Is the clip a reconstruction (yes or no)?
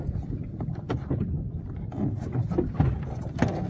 no